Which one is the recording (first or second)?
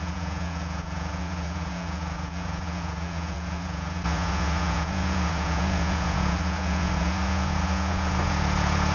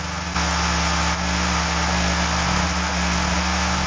second